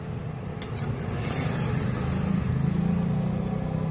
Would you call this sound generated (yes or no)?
no